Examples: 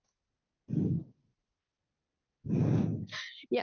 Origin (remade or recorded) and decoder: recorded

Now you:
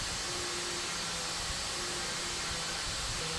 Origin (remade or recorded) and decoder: recorded